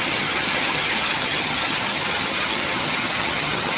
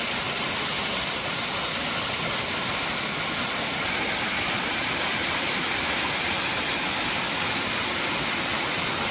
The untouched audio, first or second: second